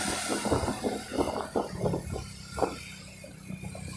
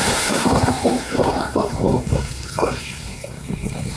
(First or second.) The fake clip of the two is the second